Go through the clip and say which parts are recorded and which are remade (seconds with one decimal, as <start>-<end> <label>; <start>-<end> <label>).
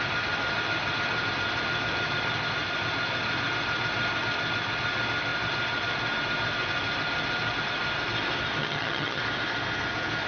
0.0-8.6 recorded; 8.6-9.2 remade; 9.2-10.3 recorded